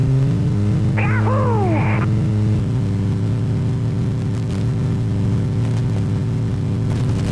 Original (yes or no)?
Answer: yes